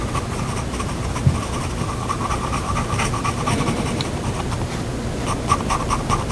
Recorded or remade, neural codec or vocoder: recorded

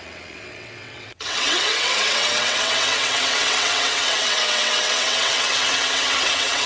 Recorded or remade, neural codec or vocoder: remade, vocoder, WaveNeXt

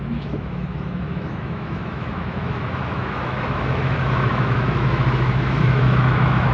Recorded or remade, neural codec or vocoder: remade, autoencoder, DAC-VAE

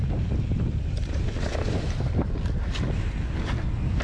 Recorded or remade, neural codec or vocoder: recorded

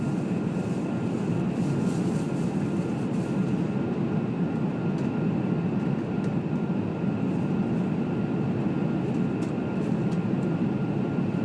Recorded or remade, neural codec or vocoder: recorded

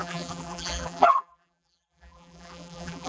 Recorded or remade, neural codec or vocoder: remade, vocoder, BigVGAN v2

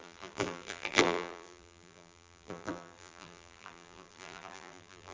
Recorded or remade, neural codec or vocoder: remade, vocoder, BigVGAN v2